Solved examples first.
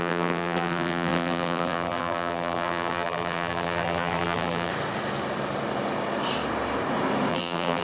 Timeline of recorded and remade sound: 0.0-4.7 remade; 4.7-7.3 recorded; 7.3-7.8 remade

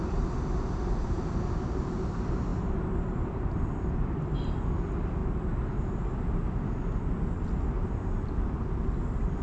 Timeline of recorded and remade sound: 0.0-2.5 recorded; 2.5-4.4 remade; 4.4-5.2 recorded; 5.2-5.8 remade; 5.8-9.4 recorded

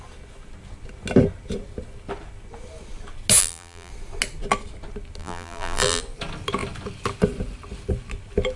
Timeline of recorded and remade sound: 0.0-3.4 recorded; 3.4-3.9 remade; 3.9-5.2 recorded; 5.2-6.0 remade; 6.0-8.6 recorded